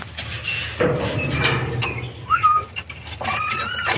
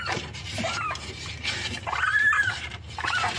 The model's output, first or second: second